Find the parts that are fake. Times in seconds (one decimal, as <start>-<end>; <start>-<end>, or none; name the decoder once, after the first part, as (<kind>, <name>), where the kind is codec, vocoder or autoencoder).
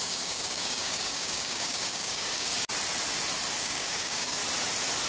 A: 0.0-2.5 (codec, DAC); 3.6-4.4